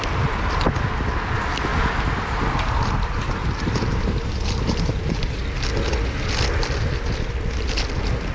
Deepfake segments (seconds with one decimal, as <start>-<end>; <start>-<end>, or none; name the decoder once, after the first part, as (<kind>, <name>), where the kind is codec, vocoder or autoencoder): 1.7-5.5 (vocoder, BigVGAN v2)